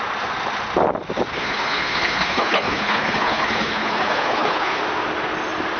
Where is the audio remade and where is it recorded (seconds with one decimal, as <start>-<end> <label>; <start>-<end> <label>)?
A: 0.0-1.3 recorded; 1.3-4.8 remade; 4.8-5.8 recorded